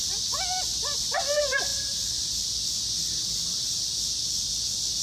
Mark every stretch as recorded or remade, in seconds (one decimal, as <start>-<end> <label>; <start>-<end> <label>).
0.0-5.0 recorded